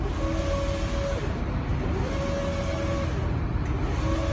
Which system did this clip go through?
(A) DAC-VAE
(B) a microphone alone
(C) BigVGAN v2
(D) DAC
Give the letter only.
B